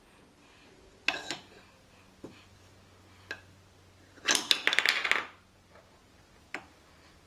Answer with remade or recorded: recorded